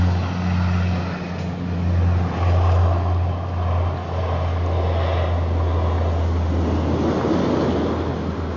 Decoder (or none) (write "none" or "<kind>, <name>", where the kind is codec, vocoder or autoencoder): none